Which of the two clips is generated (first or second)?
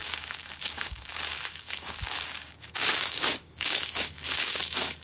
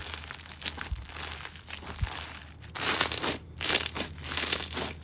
first